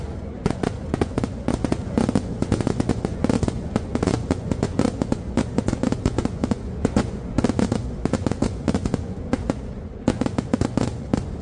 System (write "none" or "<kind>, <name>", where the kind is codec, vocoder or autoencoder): vocoder, Vocos